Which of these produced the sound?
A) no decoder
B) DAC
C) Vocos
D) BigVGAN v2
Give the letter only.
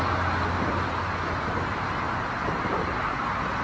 A